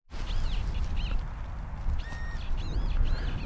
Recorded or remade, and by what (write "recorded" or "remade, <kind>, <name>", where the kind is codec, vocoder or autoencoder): recorded